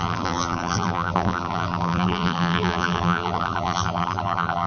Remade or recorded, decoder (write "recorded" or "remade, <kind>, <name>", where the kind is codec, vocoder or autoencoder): remade, vocoder, BigVGAN v2